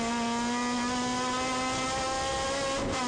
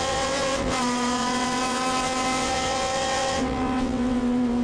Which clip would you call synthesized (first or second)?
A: second